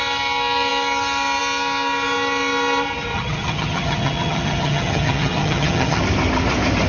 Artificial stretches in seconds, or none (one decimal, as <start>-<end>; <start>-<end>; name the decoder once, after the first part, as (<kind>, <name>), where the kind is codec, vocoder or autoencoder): 3.1-6.0 (vocoder, HiFi-GAN)